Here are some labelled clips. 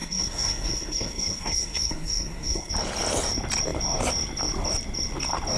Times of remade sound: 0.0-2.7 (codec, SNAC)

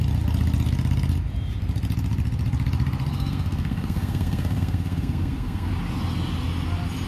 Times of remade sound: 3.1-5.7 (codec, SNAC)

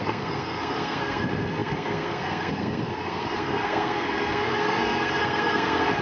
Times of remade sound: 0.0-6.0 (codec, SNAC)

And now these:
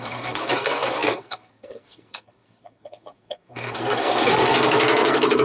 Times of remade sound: 0.0-5.4 (codec, SNAC)